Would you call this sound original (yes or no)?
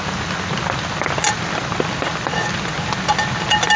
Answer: yes